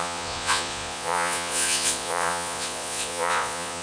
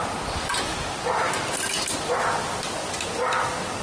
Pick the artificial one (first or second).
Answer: first